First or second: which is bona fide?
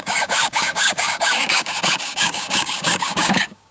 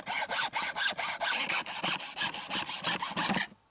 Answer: second